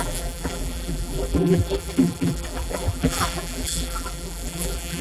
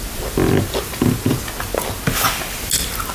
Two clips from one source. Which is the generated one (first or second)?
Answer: first